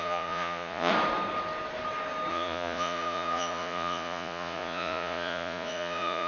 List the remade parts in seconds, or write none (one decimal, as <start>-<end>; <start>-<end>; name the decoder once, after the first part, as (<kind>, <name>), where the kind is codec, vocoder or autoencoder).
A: 0.0-0.9 (vocoder, Vocos); 2.3-6.3